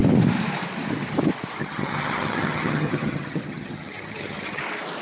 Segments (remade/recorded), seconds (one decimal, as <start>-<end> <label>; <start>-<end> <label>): 0.0-1.6 recorded; 1.6-4.6 remade; 4.6-5.0 recorded